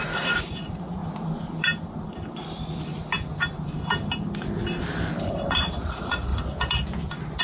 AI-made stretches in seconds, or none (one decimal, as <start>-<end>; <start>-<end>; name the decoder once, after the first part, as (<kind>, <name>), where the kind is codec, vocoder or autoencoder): 0.0-1.0 (vocoder, Vocos); 5.2-6.3